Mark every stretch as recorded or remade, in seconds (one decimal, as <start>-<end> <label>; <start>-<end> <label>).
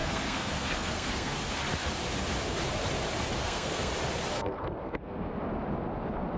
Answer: 0.0-1.4 remade; 1.4-3.4 recorded; 3.4-3.9 remade; 3.9-4.3 recorded; 4.3-5.3 remade; 5.3-6.4 recorded